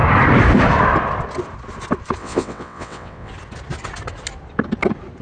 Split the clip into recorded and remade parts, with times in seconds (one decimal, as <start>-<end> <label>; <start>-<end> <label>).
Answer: 0.0-2.2 recorded; 2.2-3.3 remade; 3.3-5.2 recorded